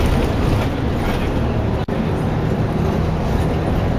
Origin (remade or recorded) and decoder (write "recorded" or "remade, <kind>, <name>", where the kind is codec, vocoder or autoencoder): recorded